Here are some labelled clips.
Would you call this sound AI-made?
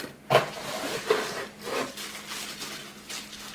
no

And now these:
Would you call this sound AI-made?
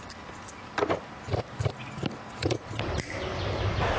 no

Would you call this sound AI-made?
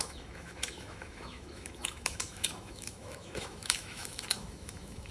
yes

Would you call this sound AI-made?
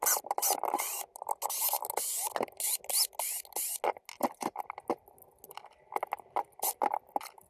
no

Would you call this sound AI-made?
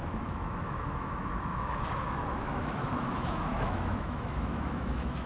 yes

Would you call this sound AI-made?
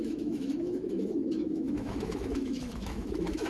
yes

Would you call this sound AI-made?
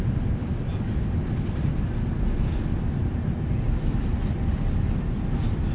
no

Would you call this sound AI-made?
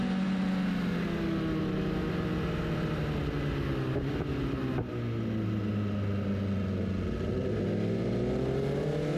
no